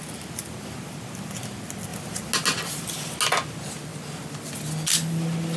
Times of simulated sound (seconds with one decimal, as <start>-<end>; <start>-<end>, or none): none